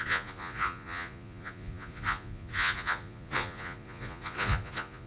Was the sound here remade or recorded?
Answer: remade